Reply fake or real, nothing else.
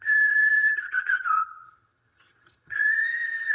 fake